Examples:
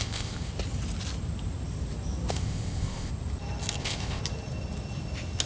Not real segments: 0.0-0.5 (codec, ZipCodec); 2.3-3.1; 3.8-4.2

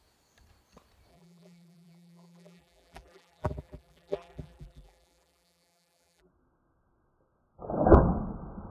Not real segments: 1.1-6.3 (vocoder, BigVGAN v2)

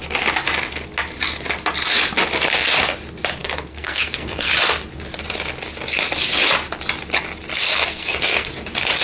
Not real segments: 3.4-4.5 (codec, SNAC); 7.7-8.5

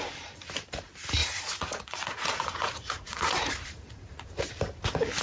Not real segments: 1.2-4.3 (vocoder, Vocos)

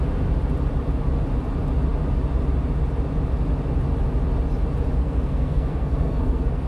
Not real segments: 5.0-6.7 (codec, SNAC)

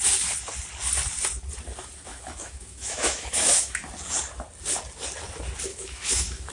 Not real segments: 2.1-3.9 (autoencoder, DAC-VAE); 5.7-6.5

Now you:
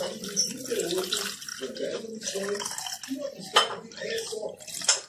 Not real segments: none

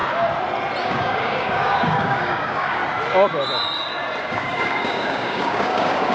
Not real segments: 0.8-2.8 (codec, DAC); 4.2-6.1